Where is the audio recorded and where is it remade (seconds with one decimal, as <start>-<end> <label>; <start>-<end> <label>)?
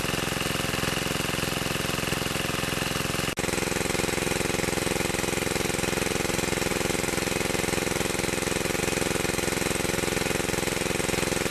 0.0-11.5 recorded